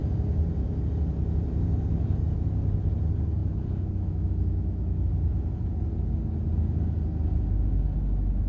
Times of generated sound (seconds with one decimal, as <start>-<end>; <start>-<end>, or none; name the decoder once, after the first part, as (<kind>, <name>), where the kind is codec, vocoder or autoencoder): 3.4-5.1 (autoencoder, DAC-VAE)